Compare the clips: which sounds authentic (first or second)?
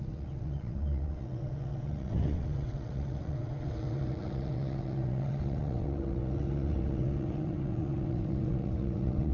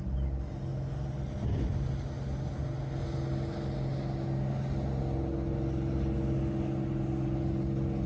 second